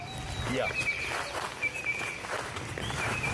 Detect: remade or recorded recorded